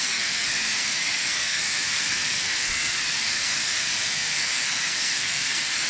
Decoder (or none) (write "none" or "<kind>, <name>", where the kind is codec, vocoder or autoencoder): codec, SNAC